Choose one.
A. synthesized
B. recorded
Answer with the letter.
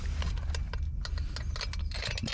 B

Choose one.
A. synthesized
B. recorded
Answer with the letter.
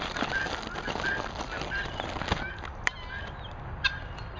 B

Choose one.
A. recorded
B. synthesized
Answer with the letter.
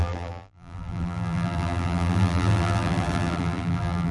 B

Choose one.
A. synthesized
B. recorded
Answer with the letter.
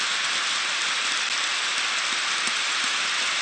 B